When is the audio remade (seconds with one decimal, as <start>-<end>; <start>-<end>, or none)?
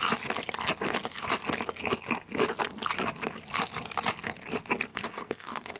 4.9-5.8